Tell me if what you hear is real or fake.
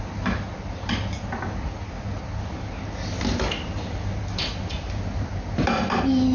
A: real